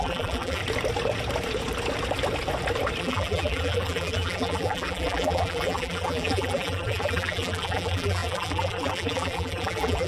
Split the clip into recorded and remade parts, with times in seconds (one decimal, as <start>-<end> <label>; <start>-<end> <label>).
0.0-0.6 remade; 0.6-3.0 recorded; 3.0-10.1 remade